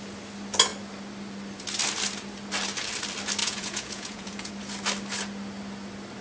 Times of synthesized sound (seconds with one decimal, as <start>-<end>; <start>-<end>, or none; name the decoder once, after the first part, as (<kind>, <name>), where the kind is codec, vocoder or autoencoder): 3.4-4.5 (vocoder, Vocos)